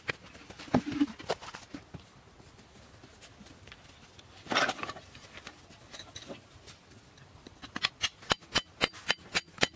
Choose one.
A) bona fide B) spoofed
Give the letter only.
A